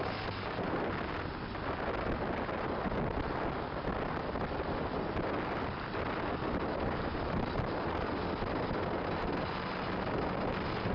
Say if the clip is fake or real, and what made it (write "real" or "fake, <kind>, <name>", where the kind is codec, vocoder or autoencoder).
real